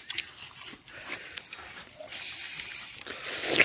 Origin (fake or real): real